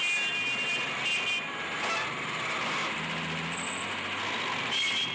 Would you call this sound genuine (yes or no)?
yes